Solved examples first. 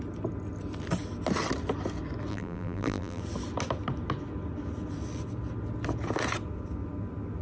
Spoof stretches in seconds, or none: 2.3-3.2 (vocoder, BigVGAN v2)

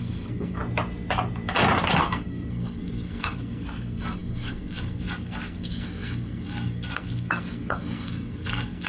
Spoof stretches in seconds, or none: 0.0-0.6 (codec, SNAC); 2.0-8.9

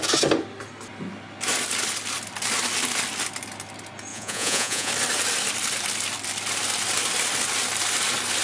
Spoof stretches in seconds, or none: 4.1-4.9 (vocoder, Vocos)

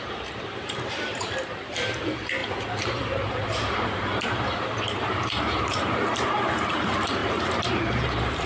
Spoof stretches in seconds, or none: 0.0-8.5 (vocoder, BigVGAN v2)

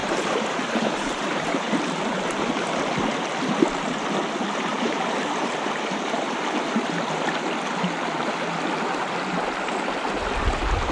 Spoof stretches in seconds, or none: 0.0-2.5 (vocoder, BigVGAN v2); 4.7-5.5

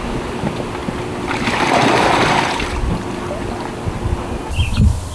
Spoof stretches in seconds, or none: none

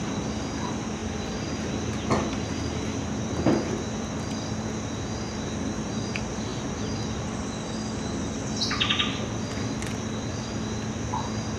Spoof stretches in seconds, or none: none